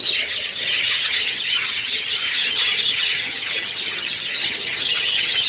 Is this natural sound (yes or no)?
no